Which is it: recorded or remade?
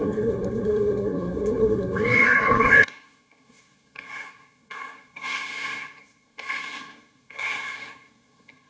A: remade